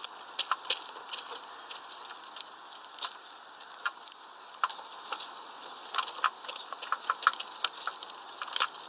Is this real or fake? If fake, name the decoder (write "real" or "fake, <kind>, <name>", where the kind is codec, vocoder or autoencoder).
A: real